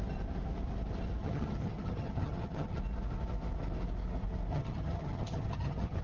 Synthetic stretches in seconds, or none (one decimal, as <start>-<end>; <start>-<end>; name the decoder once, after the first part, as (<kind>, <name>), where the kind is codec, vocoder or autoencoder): 1.2-2.8 (vocoder, HiFi-GAN); 4.5-6.0